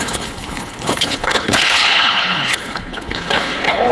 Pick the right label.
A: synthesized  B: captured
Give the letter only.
A